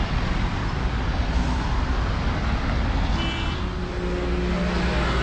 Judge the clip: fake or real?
real